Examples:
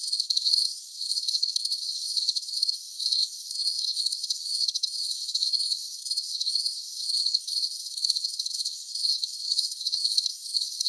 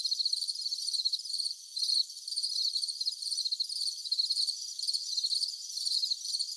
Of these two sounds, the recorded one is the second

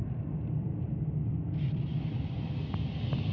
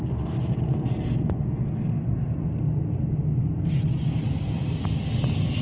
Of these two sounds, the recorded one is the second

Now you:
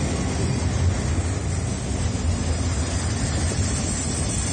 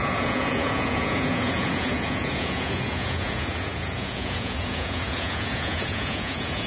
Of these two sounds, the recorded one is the first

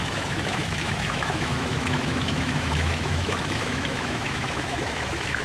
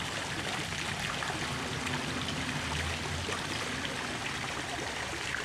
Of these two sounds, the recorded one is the second